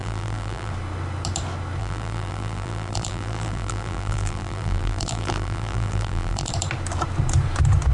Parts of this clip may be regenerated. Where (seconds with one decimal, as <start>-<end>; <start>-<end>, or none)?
0.0-0.7; 1.8-6.5